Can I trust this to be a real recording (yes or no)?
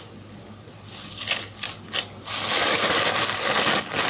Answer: yes